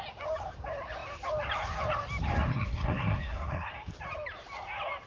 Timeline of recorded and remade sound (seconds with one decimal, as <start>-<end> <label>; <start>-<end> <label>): 0.0-2.5 recorded; 2.5-3.7 remade; 3.7-5.1 recorded